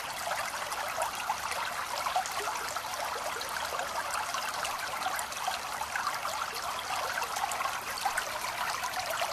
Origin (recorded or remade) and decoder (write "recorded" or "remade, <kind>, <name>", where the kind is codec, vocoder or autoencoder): recorded